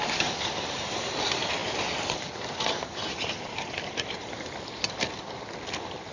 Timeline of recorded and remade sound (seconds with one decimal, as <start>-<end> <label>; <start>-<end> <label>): 0.0-1.6 recorded; 1.6-5.3 remade; 5.3-6.1 recorded